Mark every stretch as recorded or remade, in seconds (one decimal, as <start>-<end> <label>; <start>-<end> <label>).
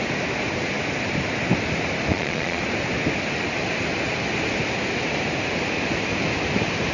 0.0-2.1 recorded; 2.1-2.6 remade; 2.6-6.9 recorded